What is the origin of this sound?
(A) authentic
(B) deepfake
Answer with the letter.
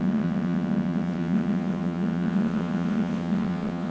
B